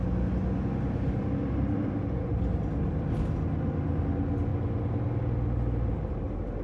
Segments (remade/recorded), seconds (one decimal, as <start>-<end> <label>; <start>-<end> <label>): 0.0-6.6 recorded

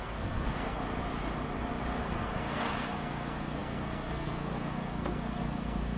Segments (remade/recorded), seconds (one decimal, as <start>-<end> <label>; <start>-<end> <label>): 0.0-0.8 remade; 0.8-2.0 recorded; 2.0-6.0 remade